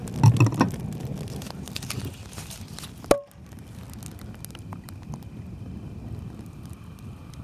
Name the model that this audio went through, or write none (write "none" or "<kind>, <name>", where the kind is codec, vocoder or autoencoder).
none